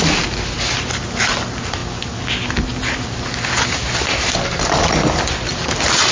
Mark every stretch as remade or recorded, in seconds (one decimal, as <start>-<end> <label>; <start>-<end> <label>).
0.0-6.1 recorded